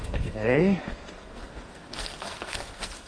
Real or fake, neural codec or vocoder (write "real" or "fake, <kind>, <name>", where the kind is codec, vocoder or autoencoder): fake, codec, SNAC